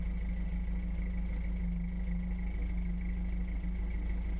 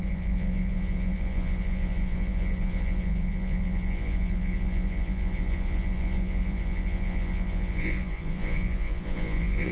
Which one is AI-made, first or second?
second